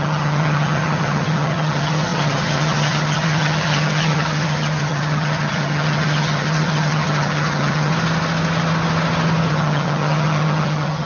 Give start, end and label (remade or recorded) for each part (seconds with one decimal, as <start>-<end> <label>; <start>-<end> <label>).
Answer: 0.0-7.9 remade; 7.9-9.5 recorded; 9.5-11.1 remade